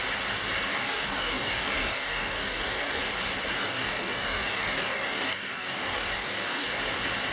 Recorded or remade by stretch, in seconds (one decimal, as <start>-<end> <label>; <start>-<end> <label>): 0.0-0.7 recorded; 0.7-3.0 remade; 3.0-3.6 recorded; 3.6-6.8 remade; 6.8-7.3 recorded

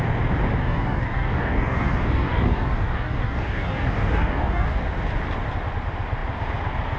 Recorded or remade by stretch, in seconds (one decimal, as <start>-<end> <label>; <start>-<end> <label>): 0.0-0.6 recorded; 0.6-4.8 remade; 4.8-7.0 recorded

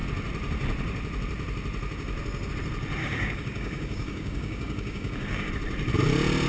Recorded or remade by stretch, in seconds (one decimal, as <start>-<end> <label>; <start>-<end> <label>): 0.0-3.0 recorded; 3.0-5.5 remade; 5.5-6.5 recorded